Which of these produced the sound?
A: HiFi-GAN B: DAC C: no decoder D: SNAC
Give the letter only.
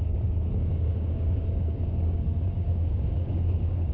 B